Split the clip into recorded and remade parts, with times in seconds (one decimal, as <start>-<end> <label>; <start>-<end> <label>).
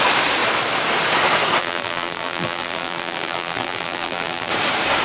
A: 0.0-1.6 recorded; 1.6-4.5 remade; 4.5-5.0 recorded